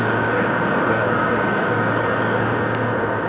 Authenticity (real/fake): fake